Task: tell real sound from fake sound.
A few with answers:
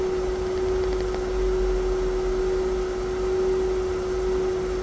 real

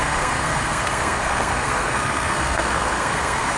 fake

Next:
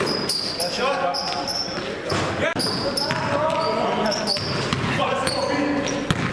real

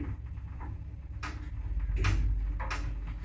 real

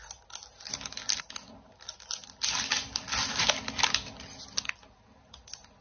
real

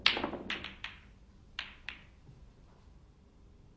real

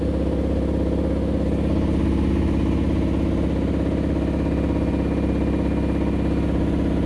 real